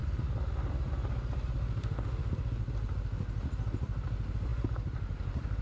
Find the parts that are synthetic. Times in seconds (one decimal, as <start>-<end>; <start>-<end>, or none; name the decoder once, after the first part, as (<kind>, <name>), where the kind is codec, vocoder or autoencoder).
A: 1.8-2.3 (autoencoder, DAC-VAE)